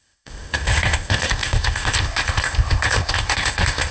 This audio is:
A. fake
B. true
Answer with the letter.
A